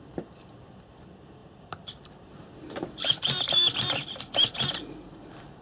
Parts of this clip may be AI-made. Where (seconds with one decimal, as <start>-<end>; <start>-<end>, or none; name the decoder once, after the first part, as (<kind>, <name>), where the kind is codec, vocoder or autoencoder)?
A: 0.0-5.6 (vocoder, BigVGAN v2)